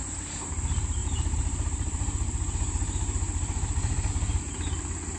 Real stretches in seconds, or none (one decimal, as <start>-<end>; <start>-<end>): 0.5-1.0; 4.1-5.2